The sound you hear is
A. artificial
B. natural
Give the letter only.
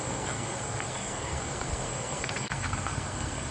A